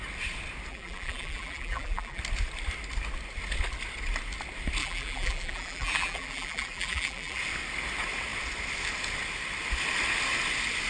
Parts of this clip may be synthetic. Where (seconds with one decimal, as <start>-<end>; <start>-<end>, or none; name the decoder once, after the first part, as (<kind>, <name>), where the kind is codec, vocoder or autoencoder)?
0.7-2.2 (vocoder, BigVGAN v2); 4.8-7.4